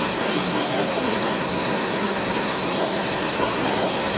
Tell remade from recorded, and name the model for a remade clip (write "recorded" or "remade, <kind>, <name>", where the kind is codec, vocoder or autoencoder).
remade, codec, SNAC